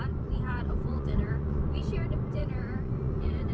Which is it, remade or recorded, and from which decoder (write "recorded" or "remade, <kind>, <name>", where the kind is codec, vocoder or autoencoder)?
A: remade, vocoder, Vocos